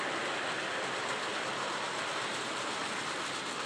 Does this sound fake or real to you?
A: real